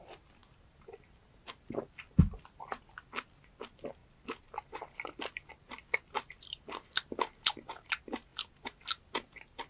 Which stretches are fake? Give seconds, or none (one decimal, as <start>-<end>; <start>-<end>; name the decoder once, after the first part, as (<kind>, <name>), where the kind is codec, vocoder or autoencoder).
none